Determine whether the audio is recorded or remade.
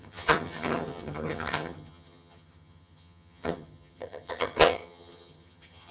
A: remade